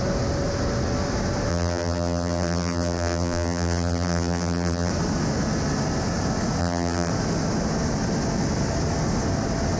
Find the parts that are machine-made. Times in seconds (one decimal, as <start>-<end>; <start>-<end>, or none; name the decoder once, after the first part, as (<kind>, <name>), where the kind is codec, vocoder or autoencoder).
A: 1.5-4.9 (vocoder, BigVGAN v2); 6.6-7.1